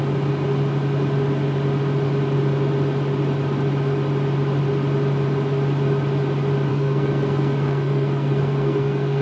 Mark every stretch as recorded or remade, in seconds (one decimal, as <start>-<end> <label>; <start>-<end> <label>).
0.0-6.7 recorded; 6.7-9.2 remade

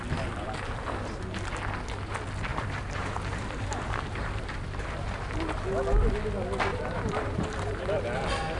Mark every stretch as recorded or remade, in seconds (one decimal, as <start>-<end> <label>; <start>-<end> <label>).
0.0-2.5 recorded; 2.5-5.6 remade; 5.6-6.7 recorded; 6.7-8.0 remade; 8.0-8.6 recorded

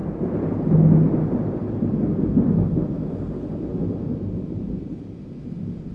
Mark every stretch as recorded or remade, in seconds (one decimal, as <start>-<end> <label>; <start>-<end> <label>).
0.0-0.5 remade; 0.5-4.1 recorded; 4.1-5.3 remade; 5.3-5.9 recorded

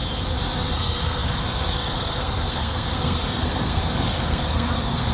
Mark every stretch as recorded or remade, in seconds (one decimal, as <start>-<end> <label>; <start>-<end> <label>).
0.0-0.7 recorded; 0.7-5.1 remade